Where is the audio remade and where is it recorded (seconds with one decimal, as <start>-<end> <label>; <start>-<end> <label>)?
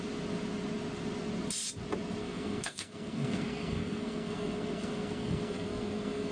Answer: 0.0-2.2 recorded; 2.2-6.3 remade